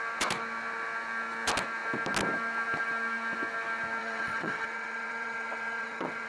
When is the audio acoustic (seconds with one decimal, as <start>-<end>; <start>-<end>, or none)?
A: 0.0-4.0